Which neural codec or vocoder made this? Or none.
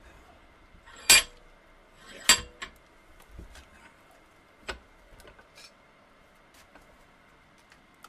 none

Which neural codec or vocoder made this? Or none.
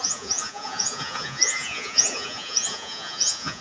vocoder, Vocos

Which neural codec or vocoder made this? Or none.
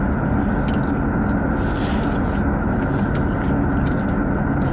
none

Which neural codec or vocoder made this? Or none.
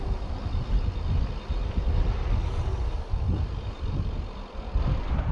none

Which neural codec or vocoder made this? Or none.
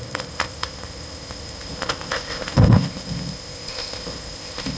codec, ZipCodec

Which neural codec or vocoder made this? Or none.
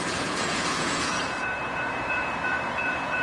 vocoder, Vocos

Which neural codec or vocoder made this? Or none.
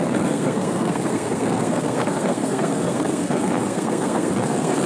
codec, SNAC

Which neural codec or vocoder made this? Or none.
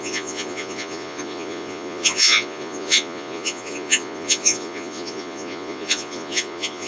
vocoder, Vocos